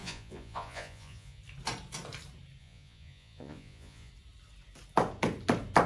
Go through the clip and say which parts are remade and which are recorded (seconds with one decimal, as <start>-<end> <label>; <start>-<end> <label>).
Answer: 0.0-1.4 remade; 1.4-2.6 recorded; 2.6-4.1 remade; 4.1-5.9 recorded